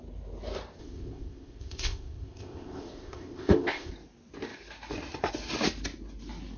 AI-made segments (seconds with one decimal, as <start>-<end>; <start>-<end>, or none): 0.8-3.9